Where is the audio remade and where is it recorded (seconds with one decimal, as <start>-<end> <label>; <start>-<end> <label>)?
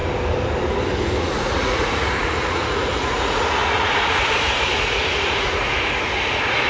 0.0-1.2 recorded; 1.2-6.7 remade